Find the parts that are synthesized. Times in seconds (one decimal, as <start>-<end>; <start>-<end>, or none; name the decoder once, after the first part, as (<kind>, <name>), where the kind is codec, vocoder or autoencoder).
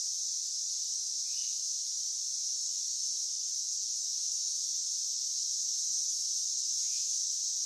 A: 2.6-3.5 (autoencoder, DAC-VAE); 4.0-4.6; 6.1-7.1